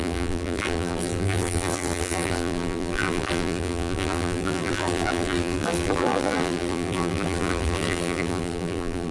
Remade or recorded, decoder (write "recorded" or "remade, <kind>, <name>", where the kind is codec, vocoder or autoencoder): remade, vocoder, BigVGAN v2